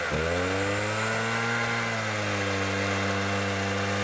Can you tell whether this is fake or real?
real